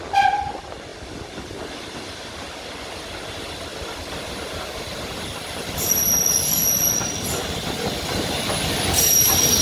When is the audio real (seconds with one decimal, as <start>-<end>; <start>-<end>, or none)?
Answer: 0.0-9.6